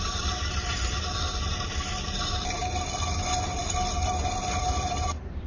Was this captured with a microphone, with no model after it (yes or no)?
no